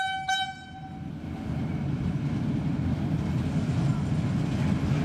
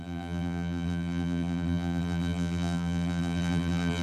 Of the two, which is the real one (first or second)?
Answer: first